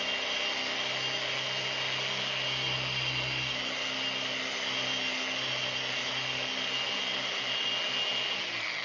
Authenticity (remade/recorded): recorded